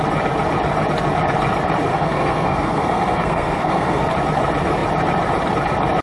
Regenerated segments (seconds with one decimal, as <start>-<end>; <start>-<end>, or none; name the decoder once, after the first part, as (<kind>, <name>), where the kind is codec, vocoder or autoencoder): 1.9-4.1 (codec, SNAC)